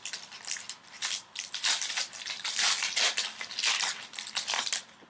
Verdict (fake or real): real